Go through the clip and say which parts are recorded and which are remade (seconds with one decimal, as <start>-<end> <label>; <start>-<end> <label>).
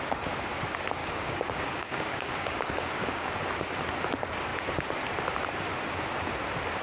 0.0-1.0 recorded; 1.0-3.3 remade; 3.3-6.8 recorded